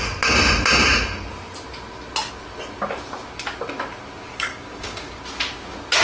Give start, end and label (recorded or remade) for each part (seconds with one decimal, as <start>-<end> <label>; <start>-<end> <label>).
0.0-4.3 recorded; 4.3-5.2 remade; 5.2-6.0 recorded